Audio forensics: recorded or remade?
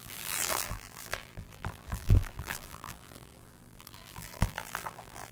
remade